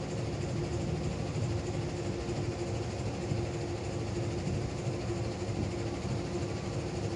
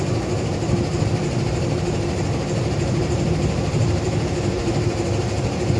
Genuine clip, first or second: first